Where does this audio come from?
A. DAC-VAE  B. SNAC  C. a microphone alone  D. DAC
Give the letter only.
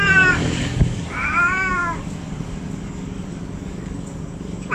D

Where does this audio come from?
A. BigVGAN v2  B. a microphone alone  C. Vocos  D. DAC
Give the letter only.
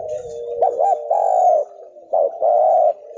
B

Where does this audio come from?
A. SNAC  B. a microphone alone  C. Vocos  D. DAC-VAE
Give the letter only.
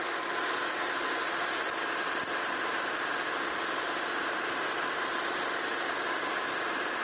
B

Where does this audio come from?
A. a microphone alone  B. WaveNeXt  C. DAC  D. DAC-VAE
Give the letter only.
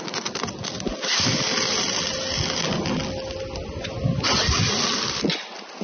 A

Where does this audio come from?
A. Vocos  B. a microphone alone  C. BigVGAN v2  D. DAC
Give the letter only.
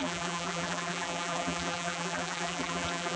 C